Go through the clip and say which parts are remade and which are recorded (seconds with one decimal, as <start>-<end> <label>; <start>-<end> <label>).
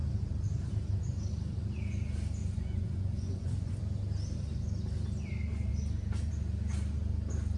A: 0.0-2.4 recorded; 2.4-3.8 remade; 3.8-7.6 recorded